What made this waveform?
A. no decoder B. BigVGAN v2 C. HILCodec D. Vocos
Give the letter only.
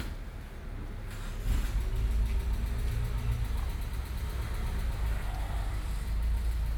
A